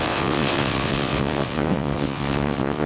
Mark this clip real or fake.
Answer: fake